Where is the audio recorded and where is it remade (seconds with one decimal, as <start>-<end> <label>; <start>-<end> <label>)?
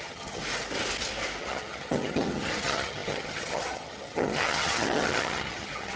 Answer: 0.0-0.4 remade; 0.4-1.4 recorded; 1.4-6.0 remade